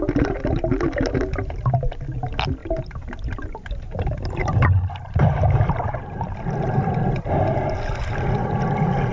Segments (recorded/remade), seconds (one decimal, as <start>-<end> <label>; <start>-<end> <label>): 0.0-2.6 recorded; 2.6-6.2 remade; 6.2-9.1 recorded